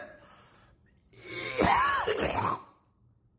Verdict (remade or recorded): remade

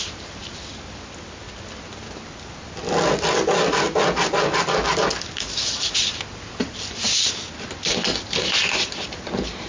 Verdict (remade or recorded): recorded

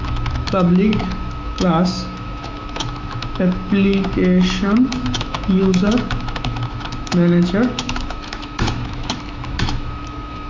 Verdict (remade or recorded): remade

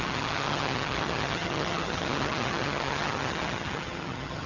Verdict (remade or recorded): remade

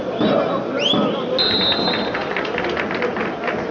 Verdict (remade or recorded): recorded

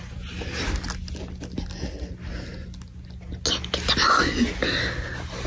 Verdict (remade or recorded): recorded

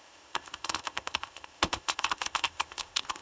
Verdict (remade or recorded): remade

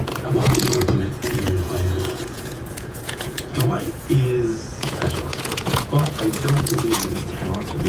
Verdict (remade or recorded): remade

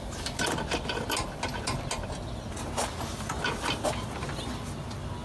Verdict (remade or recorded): recorded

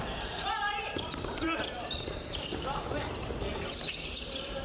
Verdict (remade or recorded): remade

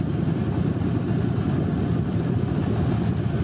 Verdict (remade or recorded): recorded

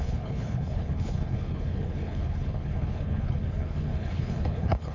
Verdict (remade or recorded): remade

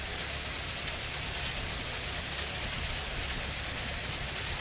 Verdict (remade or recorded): recorded